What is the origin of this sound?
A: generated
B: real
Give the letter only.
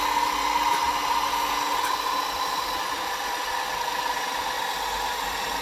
B